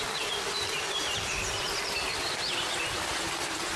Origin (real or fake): real